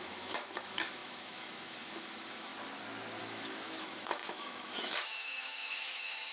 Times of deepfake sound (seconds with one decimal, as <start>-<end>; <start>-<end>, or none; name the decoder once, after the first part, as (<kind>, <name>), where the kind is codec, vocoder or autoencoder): 0.0-2.5 (autoencoder, DAC-VAE); 3.2-6.3